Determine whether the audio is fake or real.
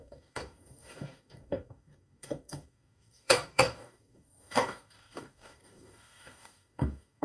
fake